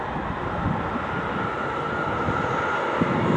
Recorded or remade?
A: recorded